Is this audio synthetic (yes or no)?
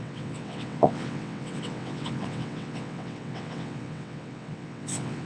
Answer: yes